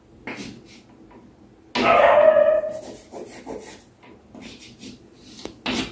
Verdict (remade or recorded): recorded